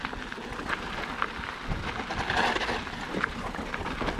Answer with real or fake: real